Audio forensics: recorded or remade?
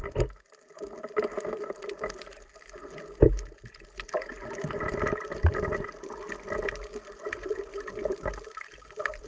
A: recorded